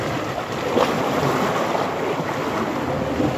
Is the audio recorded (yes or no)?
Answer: yes